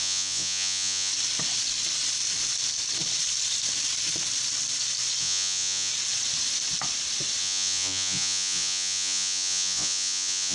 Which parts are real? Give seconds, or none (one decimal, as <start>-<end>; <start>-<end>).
1.1-5.2; 5.9-7.4